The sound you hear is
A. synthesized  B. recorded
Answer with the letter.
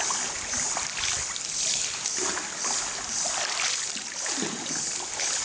B